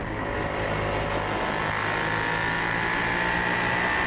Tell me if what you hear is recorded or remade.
recorded